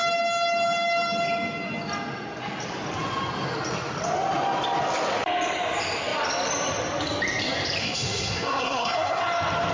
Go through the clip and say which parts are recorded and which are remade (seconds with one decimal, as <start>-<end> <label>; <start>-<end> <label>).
0.0-7.8 recorded; 7.8-9.2 remade; 9.2-9.7 recorded